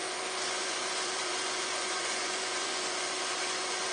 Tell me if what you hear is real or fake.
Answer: fake